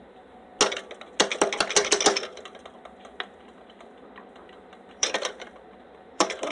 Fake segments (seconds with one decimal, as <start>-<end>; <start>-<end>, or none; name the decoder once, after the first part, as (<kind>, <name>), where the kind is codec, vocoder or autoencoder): 0.0-0.5 (vocoder, BigVGAN v2); 4.4-6.5